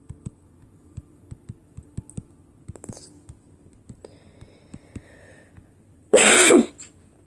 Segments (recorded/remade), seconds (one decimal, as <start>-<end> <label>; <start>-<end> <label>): 0.0-6.1 recorded; 6.1-6.7 remade; 6.7-7.3 recorded